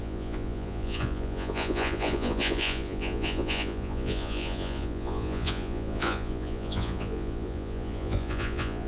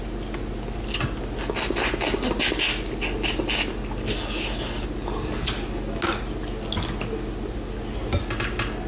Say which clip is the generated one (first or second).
first